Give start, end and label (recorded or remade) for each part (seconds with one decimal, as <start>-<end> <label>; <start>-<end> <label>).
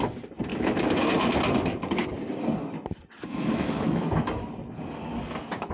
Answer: 0.0-0.5 recorded; 0.5-1.1 remade; 1.1-3.3 recorded; 3.3-4.1 remade; 4.1-5.7 recorded